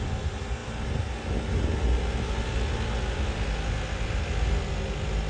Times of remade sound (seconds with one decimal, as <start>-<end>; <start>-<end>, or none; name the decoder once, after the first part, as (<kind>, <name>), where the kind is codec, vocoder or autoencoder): none